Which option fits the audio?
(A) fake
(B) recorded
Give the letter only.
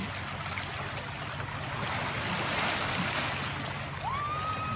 B